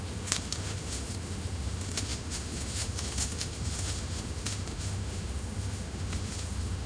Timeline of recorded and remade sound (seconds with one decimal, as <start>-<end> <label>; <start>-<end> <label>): 0.0-6.9 remade